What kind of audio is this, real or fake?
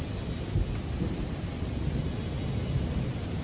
real